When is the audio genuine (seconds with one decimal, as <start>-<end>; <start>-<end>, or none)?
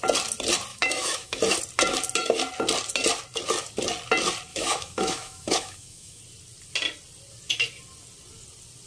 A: 0.0-0.7; 1.4-4.5; 6.2-8.9